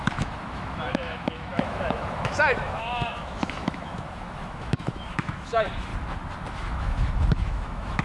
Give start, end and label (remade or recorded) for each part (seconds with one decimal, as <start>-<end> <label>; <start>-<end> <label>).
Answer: 0.0-5.9 remade; 5.9-6.5 recorded; 6.5-8.0 remade